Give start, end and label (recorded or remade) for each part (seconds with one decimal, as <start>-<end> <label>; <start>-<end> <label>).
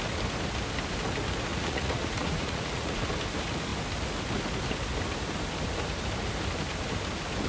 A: 0.0-1.5 recorded; 1.5-3.0 remade; 3.0-7.5 recorded